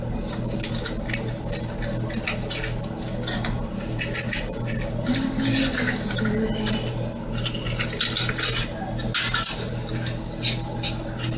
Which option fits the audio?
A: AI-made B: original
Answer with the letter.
B